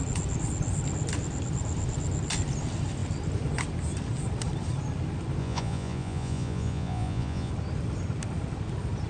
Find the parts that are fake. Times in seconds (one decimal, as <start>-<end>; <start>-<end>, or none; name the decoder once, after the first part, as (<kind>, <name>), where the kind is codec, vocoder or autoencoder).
5.4-7.5 (vocoder, Vocos)